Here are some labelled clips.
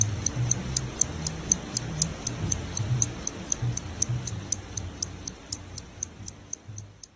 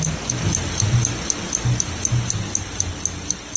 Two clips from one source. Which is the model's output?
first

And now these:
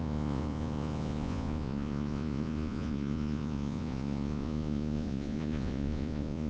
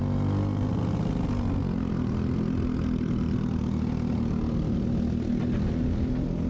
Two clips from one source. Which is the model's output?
first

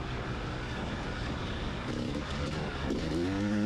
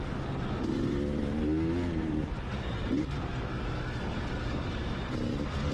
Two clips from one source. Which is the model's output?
first